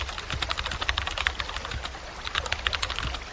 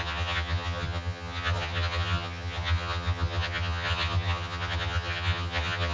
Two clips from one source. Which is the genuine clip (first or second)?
first